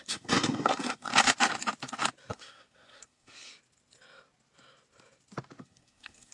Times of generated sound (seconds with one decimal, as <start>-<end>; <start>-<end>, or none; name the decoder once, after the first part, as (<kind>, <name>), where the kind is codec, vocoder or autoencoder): 0.0-1.1 (codec, SNAC); 2.3-3.5; 5.6-6.3